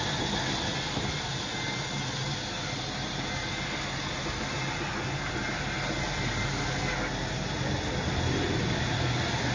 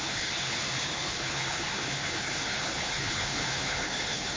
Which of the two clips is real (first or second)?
first